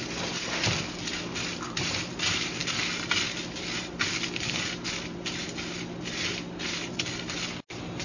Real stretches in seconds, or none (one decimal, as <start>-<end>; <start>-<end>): 0.0-8.0